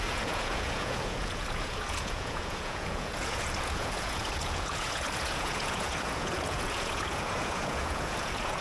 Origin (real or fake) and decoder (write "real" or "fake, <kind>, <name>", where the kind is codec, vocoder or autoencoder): fake, vocoder, Vocos